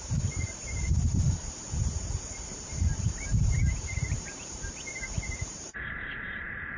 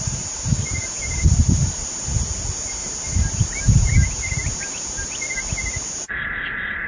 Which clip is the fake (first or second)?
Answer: first